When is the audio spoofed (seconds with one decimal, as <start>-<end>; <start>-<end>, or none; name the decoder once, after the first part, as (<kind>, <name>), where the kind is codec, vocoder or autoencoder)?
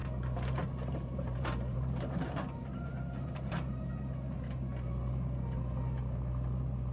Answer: 0.0-3.9 (vocoder, BigVGAN v2)